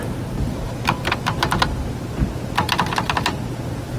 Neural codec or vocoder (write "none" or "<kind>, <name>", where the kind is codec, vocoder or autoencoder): none